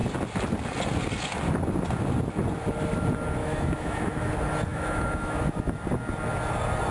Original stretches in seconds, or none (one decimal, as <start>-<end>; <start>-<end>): 0.0-3.4; 4.3-4.7; 5.4-6.9